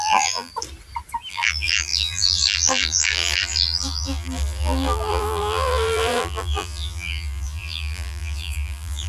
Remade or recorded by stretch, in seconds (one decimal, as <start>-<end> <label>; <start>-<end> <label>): 0.0-0.5 remade; 0.5-1.3 recorded; 1.3-9.1 remade